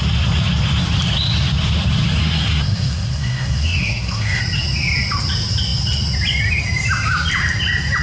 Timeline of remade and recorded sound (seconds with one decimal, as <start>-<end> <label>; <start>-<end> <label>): 0.0-2.2 recorded; 2.2-4.4 remade; 4.4-8.0 recorded